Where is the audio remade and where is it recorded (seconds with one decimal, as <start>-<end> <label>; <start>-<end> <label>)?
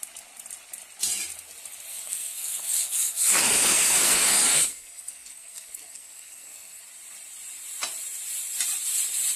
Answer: 0.0-1.9 recorded; 1.9-6.8 remade; 6.8-9.4 recorded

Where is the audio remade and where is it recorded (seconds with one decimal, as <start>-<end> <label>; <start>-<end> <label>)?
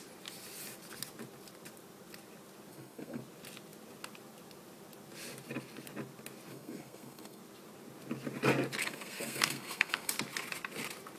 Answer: 0.0-2.7 recorded; 2.7-3.2 remade; 3.2-6.5 recorded; 6.5-7.4 remade; 7.4-8.8 recorded; 8.8-10.1 remade; 10.1-11.2 recorded